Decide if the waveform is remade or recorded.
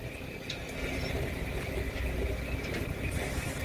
recorded